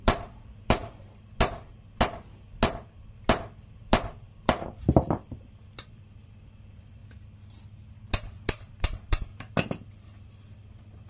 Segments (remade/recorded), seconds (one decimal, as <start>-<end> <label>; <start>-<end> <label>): 0.0-0.8 remade; 0.8-3.4 recorded; 3.4-7.0 remade; 7.0-8.4 recorded; 8.4-9.3 remade; 9.3-11.1 recorded